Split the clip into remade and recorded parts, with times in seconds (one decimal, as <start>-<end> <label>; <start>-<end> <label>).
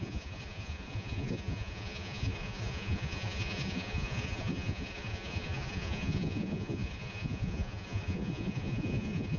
0.0-9.4 remade